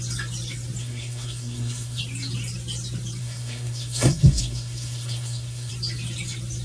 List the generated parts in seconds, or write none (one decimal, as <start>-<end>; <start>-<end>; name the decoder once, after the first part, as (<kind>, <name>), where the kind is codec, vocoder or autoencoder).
0.8-2.0 (codec, SNAC); 3.2-5.7